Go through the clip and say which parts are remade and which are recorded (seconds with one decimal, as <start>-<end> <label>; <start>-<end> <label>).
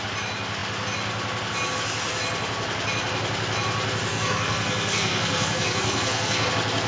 0.0-4.1 recorded; 4.1-6.5 remade; 6.5-6.9 recorded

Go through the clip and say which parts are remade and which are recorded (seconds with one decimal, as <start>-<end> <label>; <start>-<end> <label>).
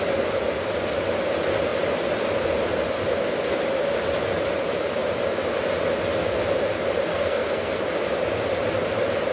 0.0-7.1 recorded; 7.1-7.8 remade; 7.8-9.3 recorded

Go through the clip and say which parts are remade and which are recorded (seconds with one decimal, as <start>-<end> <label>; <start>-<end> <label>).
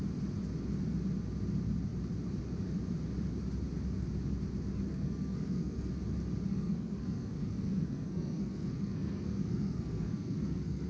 0.0-4.9 recorded; 4.9-5.9 remade; 5.9-6.5 recorded; 6.5-10.9 remade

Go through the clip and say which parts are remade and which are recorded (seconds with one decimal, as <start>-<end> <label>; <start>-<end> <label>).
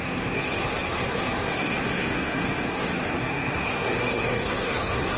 0.0-5.2 remade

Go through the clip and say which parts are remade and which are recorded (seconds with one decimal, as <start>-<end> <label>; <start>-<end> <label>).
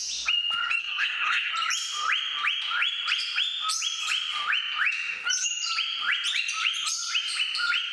0.0-0.8 recorded; 0.8-1.5 remade; 1.5-7.9 recorded